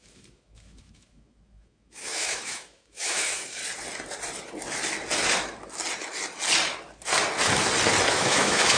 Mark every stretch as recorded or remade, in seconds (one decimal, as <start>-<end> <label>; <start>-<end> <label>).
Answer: 0.0-3.6 remade; 3.6-8.1 recorded; 8.1-8.8 remade

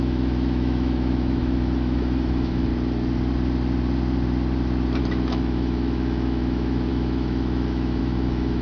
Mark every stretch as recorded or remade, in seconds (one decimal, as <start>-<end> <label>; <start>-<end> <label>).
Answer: 0.0-2.7 remade; 2.7-5.0 recorded; 5.0-8.6 remade

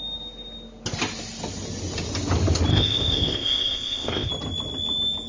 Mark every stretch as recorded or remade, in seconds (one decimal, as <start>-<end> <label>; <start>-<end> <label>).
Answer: 0.0-2.7 recorded; 2.7-4.3 remade; 4.3-5.3 recorded

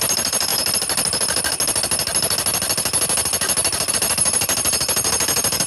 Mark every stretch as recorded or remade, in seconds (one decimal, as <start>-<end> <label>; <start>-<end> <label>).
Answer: 0.0-0.5 remade; 0.5-3.9 recorded; 3.9-5.7 remade